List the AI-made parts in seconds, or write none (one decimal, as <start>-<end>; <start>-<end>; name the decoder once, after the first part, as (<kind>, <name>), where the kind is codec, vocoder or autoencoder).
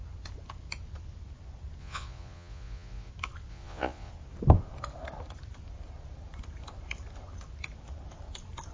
1.8-3.1 (vocoder, Vocos); 3.5-4.1